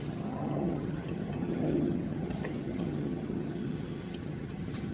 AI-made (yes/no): yes